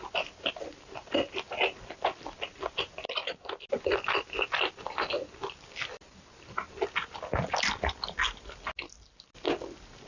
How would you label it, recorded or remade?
recorded